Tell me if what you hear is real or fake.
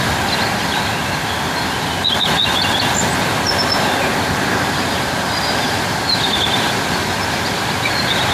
real